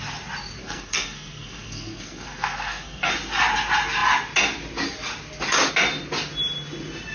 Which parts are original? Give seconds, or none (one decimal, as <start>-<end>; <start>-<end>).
0.0-0.6; 3.1-7.1